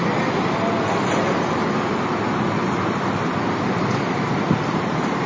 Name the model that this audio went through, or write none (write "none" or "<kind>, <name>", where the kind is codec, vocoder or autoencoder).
none